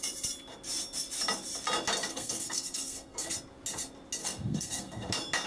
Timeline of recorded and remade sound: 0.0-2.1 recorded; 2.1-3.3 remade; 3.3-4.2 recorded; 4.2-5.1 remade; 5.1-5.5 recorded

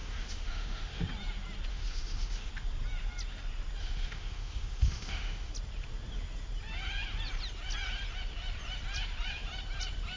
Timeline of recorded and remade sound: 0.0-1.0 remade; 1.0-1.7 recorded; 1.7-2.5 remade; 2.5-3.8 recorded; 3.8-5.5 remade; 5.5-10.2 recorded